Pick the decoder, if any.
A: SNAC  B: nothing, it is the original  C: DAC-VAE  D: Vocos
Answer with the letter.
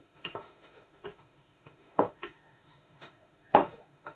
C